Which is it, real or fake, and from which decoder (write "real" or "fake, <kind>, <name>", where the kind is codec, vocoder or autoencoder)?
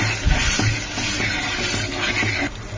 real